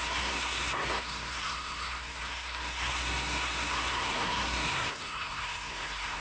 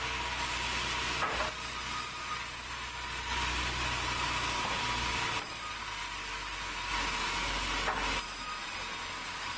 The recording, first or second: second